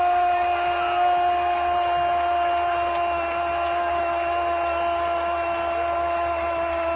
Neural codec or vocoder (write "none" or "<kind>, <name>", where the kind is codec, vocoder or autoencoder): none